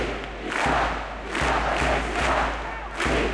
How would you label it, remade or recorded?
recorded